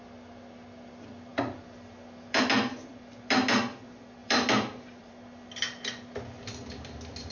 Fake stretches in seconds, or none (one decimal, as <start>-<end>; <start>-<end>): 4.2-5.1

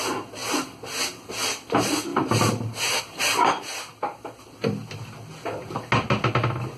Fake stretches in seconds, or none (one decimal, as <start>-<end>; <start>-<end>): none

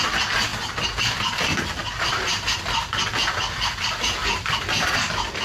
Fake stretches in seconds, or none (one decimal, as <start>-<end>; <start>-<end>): 0.0-0.5; 3.7-5.4

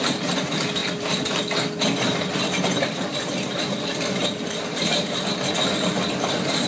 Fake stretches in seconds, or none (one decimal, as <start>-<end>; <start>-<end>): 0.8-1.4; 4.2-5.2

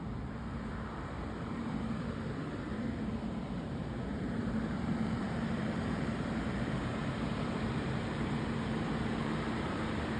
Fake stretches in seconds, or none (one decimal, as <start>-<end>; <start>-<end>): 0.0-10.2

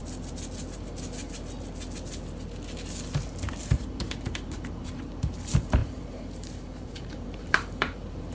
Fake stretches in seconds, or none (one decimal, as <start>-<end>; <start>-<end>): 3.6-8.3

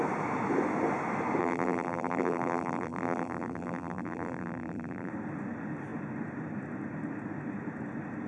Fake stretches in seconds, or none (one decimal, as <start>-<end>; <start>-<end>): 1.4-5.1